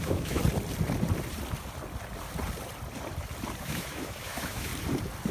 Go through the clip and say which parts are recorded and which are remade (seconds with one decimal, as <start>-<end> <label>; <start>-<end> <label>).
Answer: 0.0-0.4 remade; 0.4-3.6 recorded; 3.6-4.7 remade; 4.7-5.3 recorded